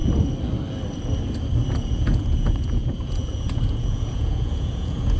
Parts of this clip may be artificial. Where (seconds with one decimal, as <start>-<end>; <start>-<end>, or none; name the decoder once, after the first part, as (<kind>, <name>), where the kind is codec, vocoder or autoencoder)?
1.7-5.2 (vocoder, Vocos)